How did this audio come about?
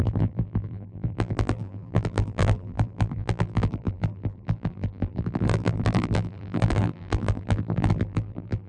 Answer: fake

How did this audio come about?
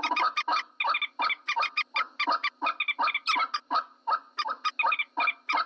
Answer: real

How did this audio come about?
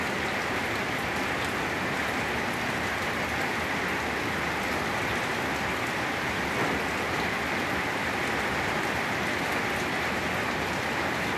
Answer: real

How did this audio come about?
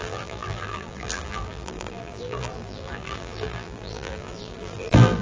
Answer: fake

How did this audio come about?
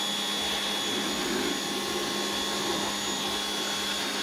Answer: real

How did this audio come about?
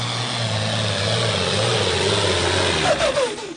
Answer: real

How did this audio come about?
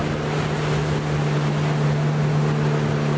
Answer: real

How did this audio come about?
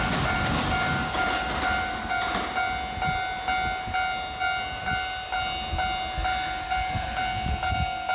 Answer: real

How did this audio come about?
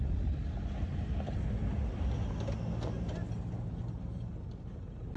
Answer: real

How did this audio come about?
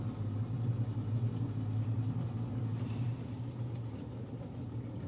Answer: real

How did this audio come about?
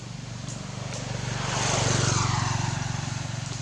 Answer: real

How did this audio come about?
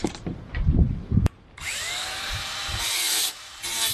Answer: fake